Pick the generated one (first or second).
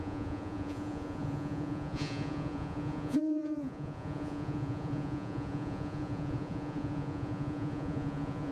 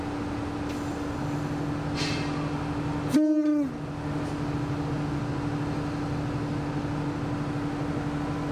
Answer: first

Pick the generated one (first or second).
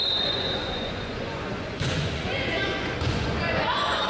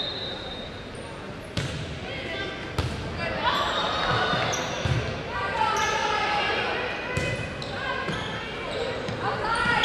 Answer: first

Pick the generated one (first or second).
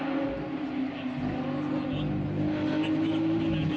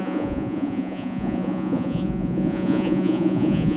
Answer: second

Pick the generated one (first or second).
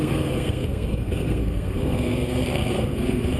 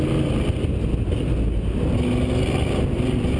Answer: first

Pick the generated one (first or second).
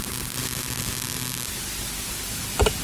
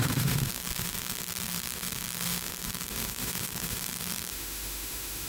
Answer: second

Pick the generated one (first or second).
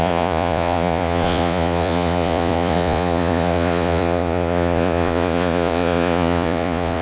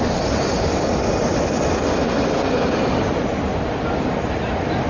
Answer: first